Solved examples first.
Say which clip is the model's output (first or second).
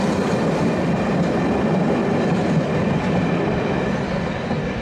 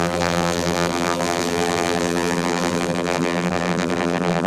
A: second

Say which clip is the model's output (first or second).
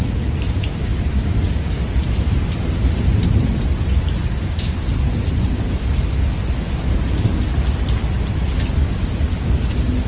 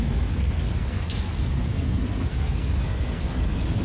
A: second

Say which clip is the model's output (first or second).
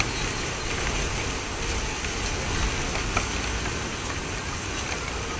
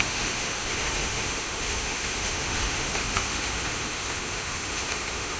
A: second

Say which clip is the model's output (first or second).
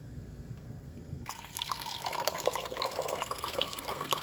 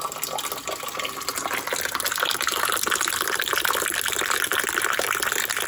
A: first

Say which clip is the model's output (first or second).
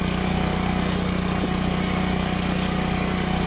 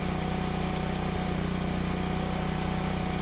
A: first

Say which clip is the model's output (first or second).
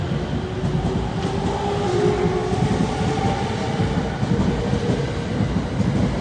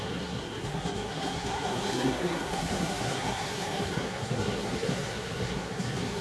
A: second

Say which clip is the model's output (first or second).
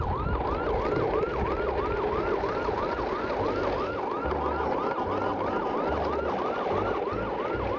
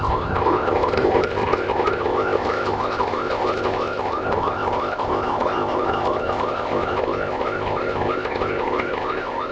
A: second